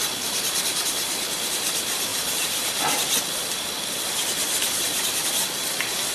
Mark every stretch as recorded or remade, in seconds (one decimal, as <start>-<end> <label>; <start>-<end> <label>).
0.0-6.1 recorded